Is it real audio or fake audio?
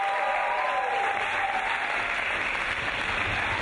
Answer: real